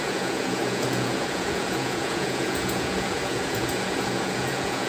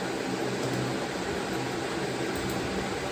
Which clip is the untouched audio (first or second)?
second